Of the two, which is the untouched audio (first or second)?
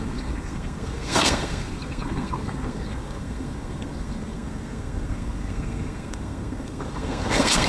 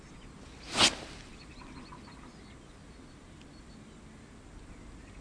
second